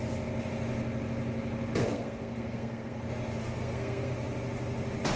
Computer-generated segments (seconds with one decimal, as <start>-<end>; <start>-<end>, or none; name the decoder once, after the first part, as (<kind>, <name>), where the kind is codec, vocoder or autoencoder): 1.8-3.0 (codec, SNAC); 3.4-4.1